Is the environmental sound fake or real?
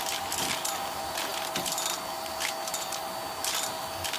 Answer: real